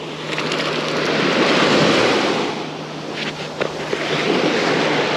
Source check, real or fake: real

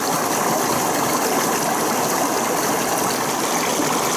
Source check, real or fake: real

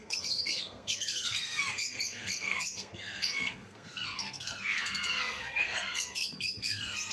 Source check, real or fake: fake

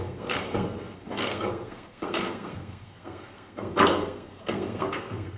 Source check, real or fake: fake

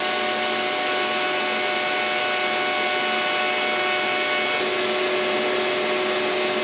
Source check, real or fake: real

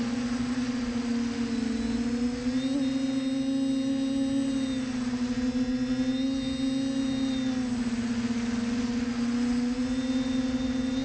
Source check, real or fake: real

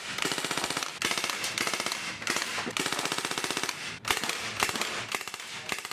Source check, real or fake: real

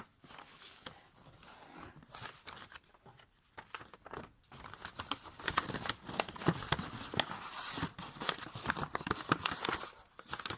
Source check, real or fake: real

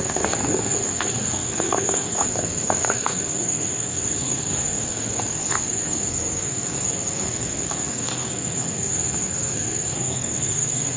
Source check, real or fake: fake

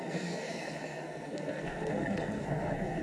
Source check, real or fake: fake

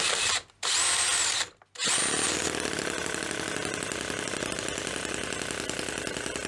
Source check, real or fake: real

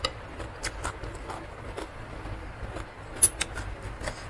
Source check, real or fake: real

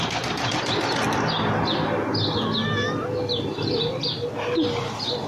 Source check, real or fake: real